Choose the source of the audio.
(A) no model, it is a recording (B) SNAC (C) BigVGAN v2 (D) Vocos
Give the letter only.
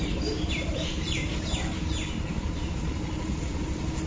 C